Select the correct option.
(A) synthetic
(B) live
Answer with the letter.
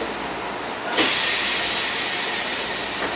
B